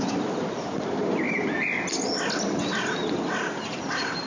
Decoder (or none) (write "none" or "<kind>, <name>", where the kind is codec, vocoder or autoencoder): none